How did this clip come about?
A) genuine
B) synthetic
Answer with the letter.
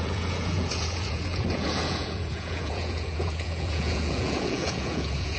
B